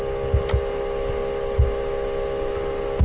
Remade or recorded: recorded